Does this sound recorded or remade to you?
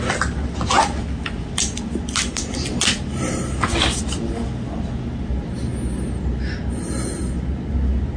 recorded